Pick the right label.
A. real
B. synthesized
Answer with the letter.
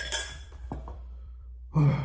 B